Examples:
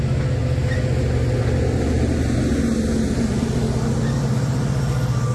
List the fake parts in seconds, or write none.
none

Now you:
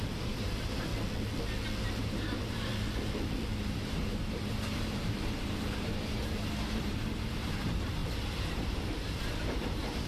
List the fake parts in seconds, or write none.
0.0-0.9; 2.0-2.7; 3.6-10.1

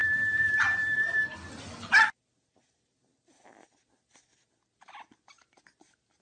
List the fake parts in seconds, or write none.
none